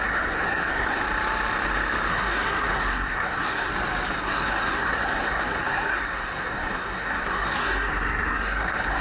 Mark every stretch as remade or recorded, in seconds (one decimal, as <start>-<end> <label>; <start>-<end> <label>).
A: 0.0-1.0 remade; 1.0-2.1 recorded; 2.1-3.7 remade; 3.7-4.2 recorded; 4.2-9.0 remade